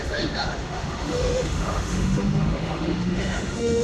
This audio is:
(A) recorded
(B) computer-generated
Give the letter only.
B